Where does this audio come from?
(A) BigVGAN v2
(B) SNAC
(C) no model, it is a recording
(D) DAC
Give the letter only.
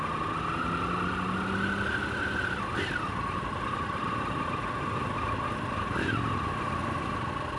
C